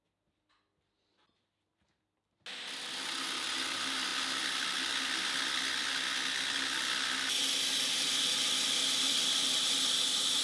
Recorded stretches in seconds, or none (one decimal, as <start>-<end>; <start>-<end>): 0.0-10.4